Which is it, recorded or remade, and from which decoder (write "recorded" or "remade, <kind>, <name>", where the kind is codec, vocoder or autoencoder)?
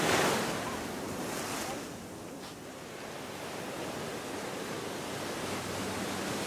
recorded